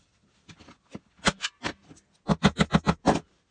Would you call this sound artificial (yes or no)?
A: no